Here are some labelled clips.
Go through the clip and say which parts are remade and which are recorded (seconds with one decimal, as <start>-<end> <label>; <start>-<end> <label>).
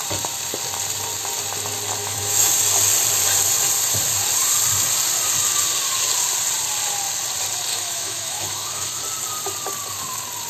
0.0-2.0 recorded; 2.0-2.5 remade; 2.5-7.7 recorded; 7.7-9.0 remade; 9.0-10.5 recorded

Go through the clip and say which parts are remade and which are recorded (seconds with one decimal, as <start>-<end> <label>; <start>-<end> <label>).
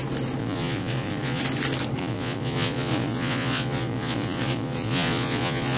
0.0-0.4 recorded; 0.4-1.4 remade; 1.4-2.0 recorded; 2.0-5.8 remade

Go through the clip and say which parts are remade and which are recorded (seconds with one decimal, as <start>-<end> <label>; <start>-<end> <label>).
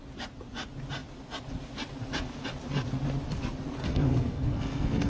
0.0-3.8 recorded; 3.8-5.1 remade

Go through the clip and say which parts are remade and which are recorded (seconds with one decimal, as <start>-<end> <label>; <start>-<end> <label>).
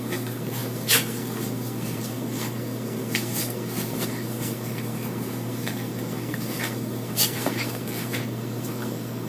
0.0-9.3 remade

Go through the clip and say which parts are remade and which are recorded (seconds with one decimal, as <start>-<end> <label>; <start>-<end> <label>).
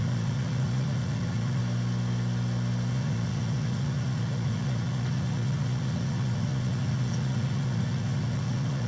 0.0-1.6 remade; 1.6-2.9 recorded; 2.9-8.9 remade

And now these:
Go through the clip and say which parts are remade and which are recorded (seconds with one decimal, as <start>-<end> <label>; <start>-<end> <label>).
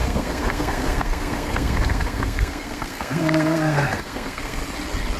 0.0-4.6 remade; 4.6-5.2 recorded